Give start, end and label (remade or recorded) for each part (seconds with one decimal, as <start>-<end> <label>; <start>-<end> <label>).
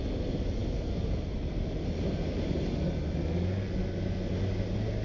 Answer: 0.0-5.0 recorded